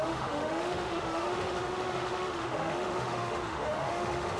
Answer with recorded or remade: remade